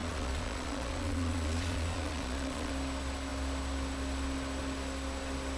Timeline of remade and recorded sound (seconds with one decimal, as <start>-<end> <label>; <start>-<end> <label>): 0.0-2.7 remade; 2.7-5.6 recorded